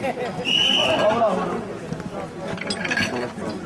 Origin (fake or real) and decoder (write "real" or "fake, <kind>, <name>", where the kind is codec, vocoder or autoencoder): real